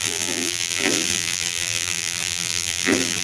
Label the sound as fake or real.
fake